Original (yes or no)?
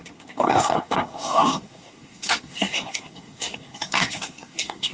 no